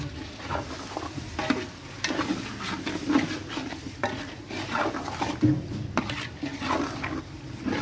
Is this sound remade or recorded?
recorded